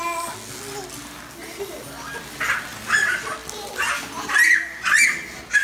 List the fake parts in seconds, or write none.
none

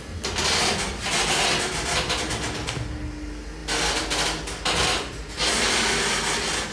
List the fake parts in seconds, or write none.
none

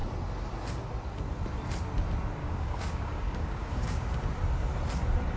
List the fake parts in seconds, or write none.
2.4-4.2 (codec, DAC)

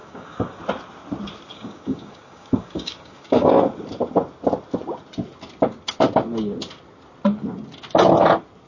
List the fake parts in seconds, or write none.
0.0-0.6 (codec, DAC); 1.5-3.5

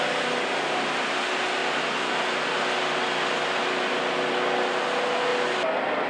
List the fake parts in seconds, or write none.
none

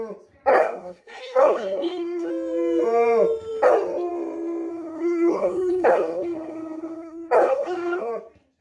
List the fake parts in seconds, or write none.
0.5-2.3 (codec, SNAC); 4.7-8.1